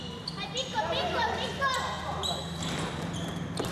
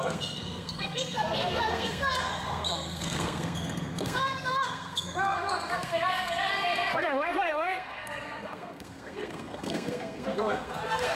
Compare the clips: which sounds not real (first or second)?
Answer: second